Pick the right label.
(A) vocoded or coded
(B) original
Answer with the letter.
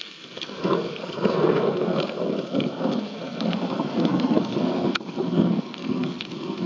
A